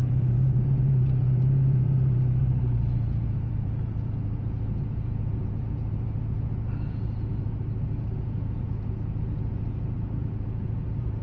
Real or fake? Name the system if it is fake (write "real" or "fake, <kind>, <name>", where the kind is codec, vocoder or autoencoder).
fake, vocoder, Vocos